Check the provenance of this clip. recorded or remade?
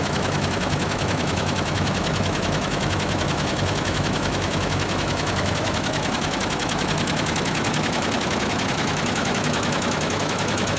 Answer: remade